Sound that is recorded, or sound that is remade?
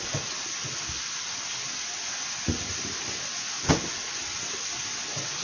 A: recorded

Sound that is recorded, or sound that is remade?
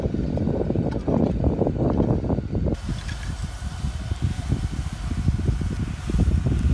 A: recorded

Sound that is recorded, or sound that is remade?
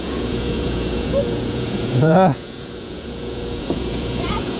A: remade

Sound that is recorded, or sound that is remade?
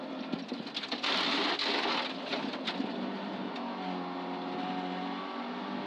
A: recorded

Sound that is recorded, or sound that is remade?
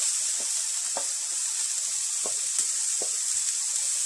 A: recorded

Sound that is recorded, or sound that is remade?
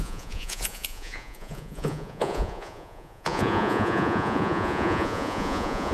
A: remade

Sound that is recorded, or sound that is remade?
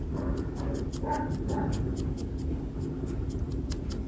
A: recorded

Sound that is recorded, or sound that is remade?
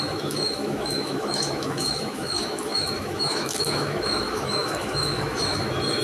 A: remade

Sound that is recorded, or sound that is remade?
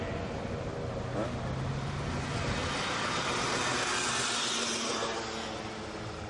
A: recorded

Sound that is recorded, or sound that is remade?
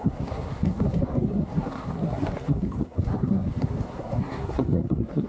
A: remade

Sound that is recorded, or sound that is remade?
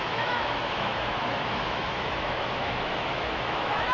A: remade